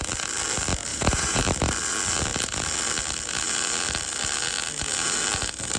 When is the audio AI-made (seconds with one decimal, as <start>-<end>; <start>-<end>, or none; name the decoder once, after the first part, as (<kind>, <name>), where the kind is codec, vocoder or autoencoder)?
0.9-1.4 (vocoder, Vocos)